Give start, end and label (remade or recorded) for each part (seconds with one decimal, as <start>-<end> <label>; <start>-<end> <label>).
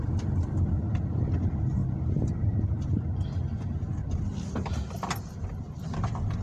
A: 0.0-6.4 recorded